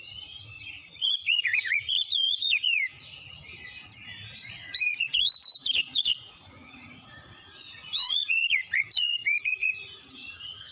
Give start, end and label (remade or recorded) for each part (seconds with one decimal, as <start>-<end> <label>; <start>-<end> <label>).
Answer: 0.0-10.7 remade